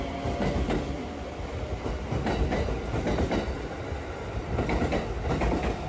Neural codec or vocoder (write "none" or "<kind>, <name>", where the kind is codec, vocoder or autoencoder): none